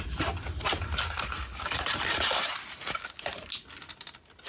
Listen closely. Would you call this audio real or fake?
real